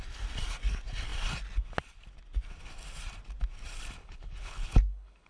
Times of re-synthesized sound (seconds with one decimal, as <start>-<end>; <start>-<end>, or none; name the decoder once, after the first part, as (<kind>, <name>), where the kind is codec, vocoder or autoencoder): 4.0-5.3 (codec, HILCodec)